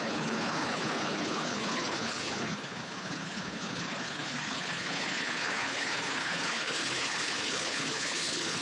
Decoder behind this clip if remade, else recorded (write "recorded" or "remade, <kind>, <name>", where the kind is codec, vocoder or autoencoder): remade, codec, HILCodec